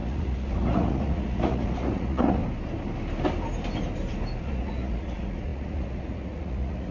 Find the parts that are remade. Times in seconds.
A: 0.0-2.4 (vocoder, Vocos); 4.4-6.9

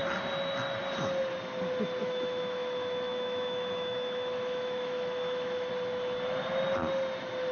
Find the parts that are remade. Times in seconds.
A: 2.0-5.7 (autoencoder, DAC-VAE)

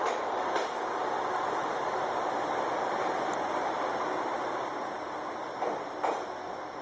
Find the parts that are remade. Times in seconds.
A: none

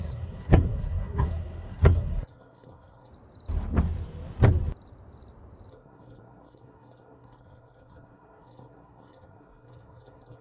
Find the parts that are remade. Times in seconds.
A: 0.0-3.1 (codec, SNAC); 5.7-10.4

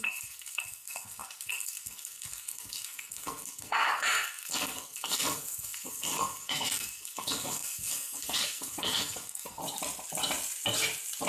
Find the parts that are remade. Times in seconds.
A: 0.0-9.6 (codec, SNAC)

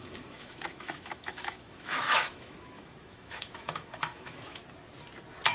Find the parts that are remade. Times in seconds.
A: 0.0-4.6 (autoencoder, DAC-VAE)

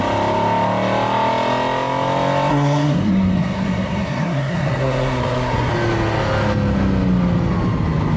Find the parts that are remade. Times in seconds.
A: 2.5-5.7 (codec, SNAC)